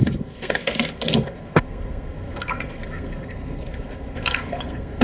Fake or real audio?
fake